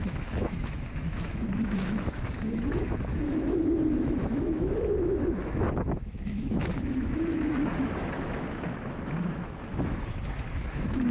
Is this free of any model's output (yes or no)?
no